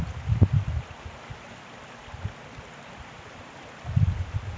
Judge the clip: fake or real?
real